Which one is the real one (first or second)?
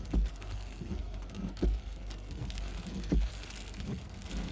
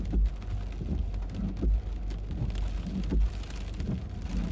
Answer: second